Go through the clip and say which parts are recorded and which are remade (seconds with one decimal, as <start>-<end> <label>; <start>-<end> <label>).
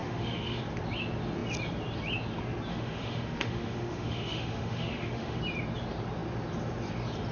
0.0-0.6 remade; 0.6-2.7 recorded; 2.7-5.4 remade; 5.4-7.3 recorded